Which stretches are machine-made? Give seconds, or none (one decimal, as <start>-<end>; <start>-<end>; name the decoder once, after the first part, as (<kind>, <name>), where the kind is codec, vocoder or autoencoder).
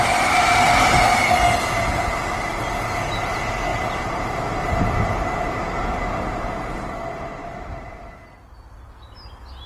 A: 3.7-4.3 (vocoder, BigVGAN v2); 7.4-8.1